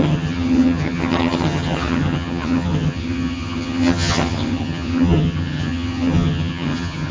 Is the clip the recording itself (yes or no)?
no